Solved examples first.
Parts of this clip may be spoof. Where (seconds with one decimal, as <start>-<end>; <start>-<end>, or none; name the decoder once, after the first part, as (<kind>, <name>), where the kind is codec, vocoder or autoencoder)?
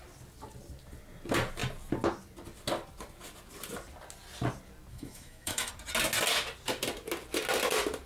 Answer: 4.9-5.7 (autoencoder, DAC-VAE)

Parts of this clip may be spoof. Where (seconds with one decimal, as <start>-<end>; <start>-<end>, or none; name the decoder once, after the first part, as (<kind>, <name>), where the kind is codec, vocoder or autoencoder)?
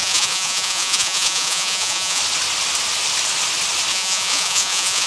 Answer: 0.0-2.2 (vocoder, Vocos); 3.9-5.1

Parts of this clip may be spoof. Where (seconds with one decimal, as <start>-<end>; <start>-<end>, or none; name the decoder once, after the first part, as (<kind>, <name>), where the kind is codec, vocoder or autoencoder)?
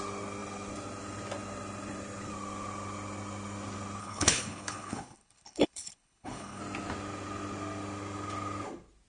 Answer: 4.0-6.6 (codec, HILCodec)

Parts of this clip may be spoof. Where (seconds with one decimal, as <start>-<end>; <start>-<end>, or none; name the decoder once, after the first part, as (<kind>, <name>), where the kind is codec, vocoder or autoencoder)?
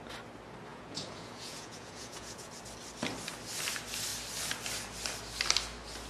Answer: 0.7-2.5 (vocoder, Vocos)